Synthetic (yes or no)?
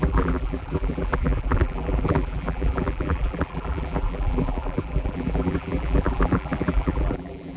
yes